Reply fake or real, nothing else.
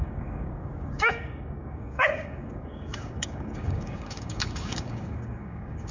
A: fake